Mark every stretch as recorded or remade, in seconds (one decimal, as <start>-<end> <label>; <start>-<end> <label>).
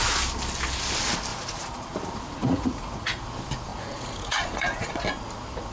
0.0-1.3 recorded; 1.3-1.9 remade; 1.9-2.4 recorded; 2.4-3.2 remade; 3.2-3.7 recorded; 3.7-5.0 remade; 5.0-5.7 recorded